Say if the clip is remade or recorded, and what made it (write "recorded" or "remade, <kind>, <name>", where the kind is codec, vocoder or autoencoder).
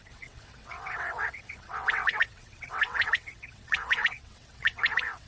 remade, vocoder, WaveNeXt